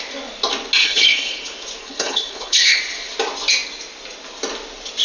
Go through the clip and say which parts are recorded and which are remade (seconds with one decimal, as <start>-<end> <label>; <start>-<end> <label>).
0.0-0.8 recorded; 0.8-1.4 remade; 1.4-1.8 recorded; 1.8-2.8 remade; 2.8-5.0 recorded